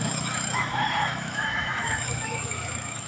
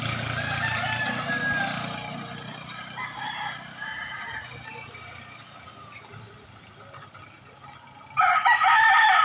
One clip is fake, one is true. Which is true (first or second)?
second